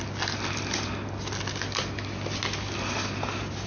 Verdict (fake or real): real